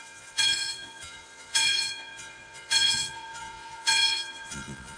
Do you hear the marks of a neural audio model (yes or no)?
yes